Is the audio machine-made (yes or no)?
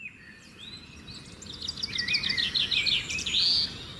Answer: no